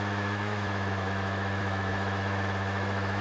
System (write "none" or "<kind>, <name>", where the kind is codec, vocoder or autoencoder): autoencoder, DAC-VAE